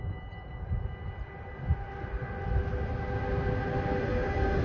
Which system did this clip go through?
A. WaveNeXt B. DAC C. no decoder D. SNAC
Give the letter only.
C